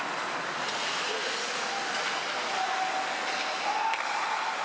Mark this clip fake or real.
real